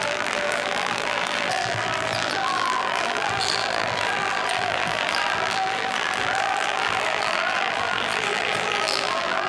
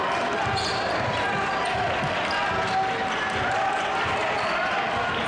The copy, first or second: first